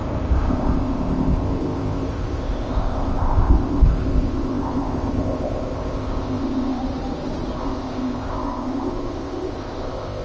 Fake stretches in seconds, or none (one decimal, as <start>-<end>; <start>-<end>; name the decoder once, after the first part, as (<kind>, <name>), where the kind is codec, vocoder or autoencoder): 0.0-6.8 (codec, ZipCodec); 7.6-10.2

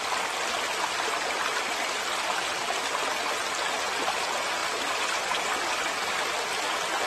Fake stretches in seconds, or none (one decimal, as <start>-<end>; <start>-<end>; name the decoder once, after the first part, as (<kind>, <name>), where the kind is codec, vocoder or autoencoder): none

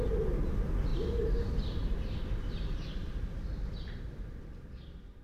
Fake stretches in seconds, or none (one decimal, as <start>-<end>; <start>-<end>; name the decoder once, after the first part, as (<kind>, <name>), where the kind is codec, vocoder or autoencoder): none

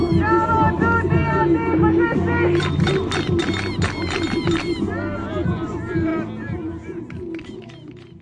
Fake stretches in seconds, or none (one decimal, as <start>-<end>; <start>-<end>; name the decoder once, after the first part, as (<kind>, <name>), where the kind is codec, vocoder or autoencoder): none